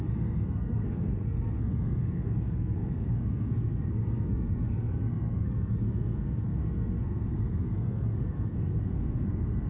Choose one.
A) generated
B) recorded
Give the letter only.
A